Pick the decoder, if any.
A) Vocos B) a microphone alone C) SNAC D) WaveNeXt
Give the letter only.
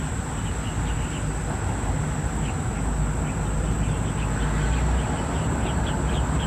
B